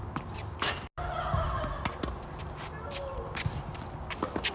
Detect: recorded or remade recorded